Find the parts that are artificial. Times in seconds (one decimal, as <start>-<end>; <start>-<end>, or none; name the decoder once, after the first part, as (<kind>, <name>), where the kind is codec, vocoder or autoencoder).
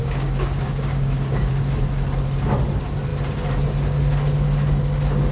0.0-1.5 (codec, DAC)